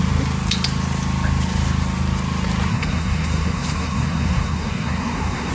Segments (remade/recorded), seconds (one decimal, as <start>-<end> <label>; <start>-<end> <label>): 0.0-2.7 recorded; 2.7-5.5 remade